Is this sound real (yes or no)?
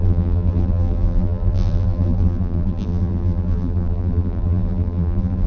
no